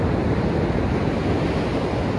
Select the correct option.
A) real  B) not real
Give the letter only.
A